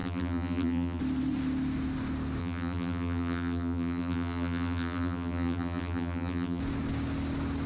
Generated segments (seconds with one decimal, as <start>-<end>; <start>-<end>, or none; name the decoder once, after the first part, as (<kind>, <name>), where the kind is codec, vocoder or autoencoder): 0.0-1.0 (vocoder, BigVGAN v2); 2.4-6.6